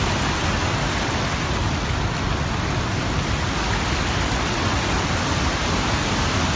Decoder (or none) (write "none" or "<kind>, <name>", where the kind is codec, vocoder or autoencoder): none